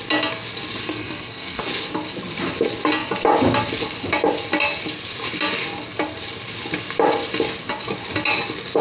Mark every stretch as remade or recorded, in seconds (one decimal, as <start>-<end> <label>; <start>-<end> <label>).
0.0-0.8 recorded; 0.8-1.6 remade; 1.6-8.8 recorded